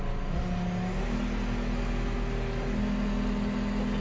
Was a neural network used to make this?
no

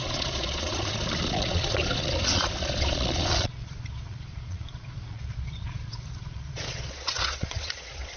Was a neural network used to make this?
yes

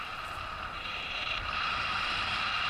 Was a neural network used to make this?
yes